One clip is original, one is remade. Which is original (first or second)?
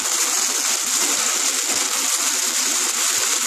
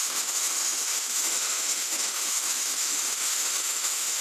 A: first